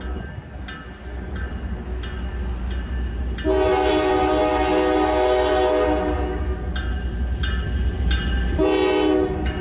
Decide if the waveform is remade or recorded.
recorded